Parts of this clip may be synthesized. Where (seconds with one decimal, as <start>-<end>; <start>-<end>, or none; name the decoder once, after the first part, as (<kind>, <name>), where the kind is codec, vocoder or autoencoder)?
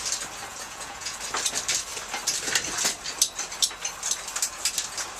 0.5-1.2 (vocoder, Vocos)